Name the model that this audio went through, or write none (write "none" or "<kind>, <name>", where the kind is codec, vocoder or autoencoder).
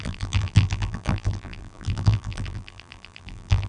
vocoder, BigVGAN v2